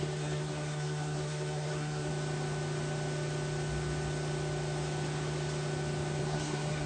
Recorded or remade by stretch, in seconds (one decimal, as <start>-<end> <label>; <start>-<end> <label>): 0.0-2.1 remade; 2.1-6.2 recorded; 6.2-6.9 remade

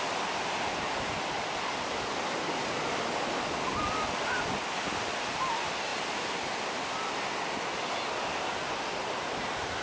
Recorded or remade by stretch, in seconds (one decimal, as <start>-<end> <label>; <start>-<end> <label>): 0.0-9.8 recorded